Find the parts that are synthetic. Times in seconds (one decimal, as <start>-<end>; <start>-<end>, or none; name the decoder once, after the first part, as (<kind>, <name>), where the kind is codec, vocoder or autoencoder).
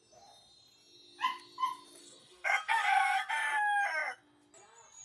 2.0-3.3 (codec, SNAC)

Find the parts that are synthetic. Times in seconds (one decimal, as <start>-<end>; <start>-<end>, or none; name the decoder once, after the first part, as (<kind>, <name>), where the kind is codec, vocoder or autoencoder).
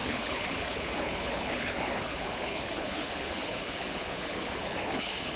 0.0-5.4 (codec, HILCodec)